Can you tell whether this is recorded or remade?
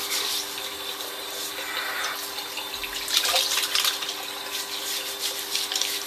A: remade